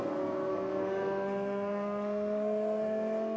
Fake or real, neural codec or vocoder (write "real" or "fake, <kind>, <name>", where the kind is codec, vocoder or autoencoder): fake, codec, SNAC